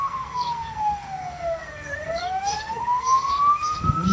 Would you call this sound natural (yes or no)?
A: no